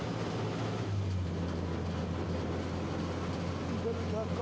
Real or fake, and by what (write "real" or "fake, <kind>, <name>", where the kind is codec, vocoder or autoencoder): real